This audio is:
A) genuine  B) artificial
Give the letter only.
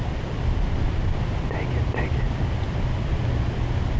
A